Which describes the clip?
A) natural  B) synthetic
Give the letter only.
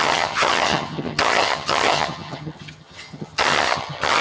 B